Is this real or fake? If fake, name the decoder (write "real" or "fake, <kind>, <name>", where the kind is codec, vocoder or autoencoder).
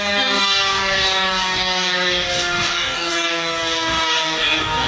fake, codec, DAC